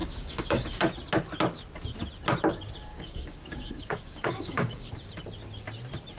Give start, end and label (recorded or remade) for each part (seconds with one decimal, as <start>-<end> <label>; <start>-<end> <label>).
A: 0.0-0.8 remade; 0.8-2.9 recorded; 2.9-4.9 remade; 4.9-6.2 recorded